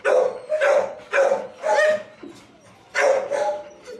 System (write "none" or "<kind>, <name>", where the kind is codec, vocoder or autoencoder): none